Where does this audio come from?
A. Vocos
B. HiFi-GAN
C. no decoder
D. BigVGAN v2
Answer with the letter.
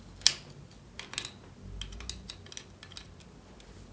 C